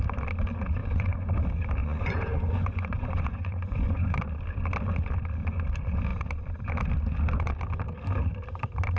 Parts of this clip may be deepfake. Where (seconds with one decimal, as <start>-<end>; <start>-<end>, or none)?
0.8-1.4; 1.8-4.2